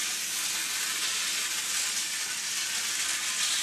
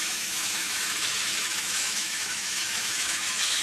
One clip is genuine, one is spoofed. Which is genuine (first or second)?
first